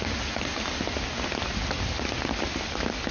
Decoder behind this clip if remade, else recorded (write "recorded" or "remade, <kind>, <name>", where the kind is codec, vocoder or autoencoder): recorded